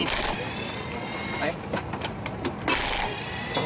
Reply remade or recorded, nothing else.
recorded